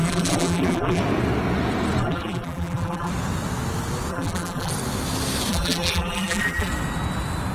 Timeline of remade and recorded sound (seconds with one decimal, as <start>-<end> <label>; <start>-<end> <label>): 0.0-1.0 remade; 1.0-2.0 recorded; 2.0-3.1 remade; 3.1-4.1 recorded; 4.1-4.7 remade; 4.7-5.5 recorded; 5.5-6.7 remade; 6.7-7.5 recorded